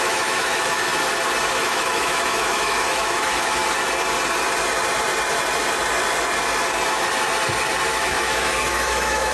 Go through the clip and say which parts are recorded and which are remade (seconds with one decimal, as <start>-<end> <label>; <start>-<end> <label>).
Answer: 0.0-0.9 remade; 0.9-1.5 recorded; 1.5-3.6 remade; 3.6-7.9 recorded; 7.9-9.3 remade